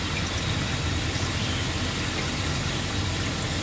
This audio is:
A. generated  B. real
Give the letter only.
B